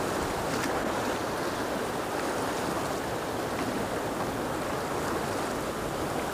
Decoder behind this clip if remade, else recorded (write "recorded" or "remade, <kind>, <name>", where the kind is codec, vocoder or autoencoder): recorded